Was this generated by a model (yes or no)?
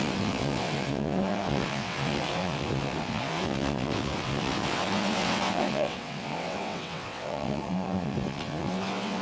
yes